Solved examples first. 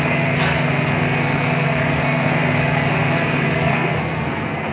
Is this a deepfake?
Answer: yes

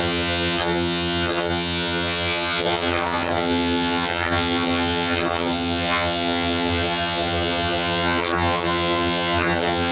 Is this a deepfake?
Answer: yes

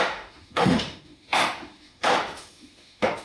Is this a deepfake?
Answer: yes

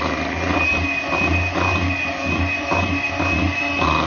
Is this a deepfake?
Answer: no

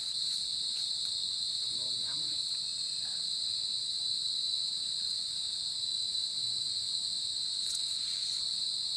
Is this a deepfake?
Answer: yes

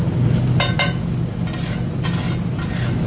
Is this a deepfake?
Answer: no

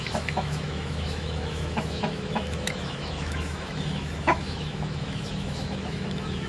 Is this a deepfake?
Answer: yes